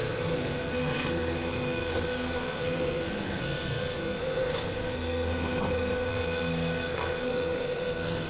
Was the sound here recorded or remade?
remade